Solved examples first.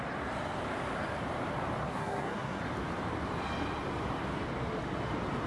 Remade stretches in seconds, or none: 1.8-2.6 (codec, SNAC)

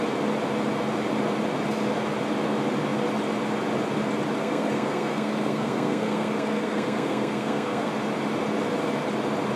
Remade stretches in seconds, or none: 4.4-7.9 (codec, SNAC)

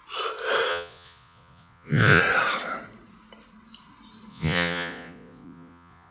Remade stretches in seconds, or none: 0.7-2.2 (vocoder, Vocos); 4.3-6.1